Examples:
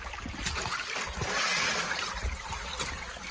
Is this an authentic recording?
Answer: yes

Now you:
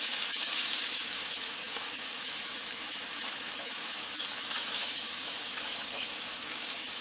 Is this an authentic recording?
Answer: no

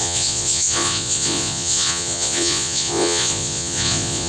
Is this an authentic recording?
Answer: no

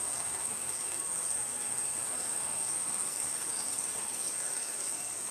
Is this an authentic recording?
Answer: no